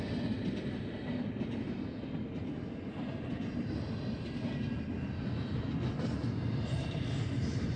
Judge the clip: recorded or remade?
recorded